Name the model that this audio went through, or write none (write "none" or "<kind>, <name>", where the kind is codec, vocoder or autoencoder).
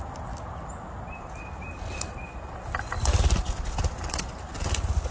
none